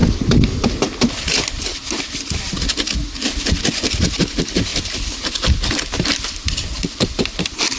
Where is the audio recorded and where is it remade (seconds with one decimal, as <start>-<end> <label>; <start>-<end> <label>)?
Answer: 0.0-7.8 recorded